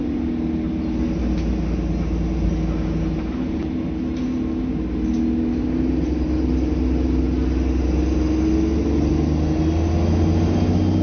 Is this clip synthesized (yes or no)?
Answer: no